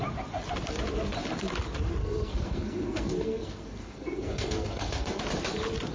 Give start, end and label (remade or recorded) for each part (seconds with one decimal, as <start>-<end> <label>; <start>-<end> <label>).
0.0-2.0 recorded; 2.0-5.2 remade; 5.2-5.9 recorded